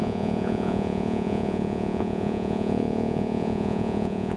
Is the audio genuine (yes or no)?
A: no